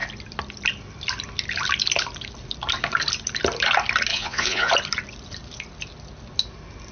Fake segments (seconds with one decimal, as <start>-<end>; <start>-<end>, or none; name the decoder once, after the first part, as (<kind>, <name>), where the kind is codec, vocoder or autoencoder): 4.1-4.7 (vocoder, Vocos)